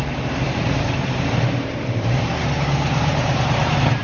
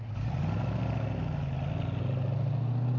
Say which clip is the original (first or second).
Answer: second